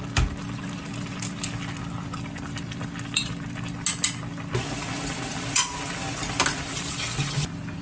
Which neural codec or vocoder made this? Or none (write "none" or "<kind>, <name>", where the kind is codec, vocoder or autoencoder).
none